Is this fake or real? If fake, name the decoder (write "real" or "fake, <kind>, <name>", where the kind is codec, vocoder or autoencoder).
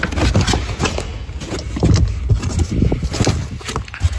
real